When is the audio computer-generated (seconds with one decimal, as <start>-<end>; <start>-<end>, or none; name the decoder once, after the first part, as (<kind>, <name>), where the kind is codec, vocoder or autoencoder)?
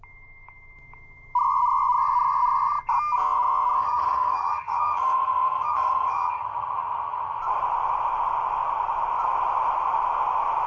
3.8-7.4 (vocoder, HiFi-GAN)